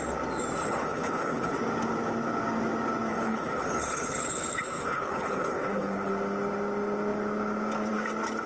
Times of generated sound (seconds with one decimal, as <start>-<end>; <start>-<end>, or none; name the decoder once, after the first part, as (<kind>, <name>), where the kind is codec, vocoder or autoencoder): 0.6-1.5 (codec, HILCodec); 3.1-6.1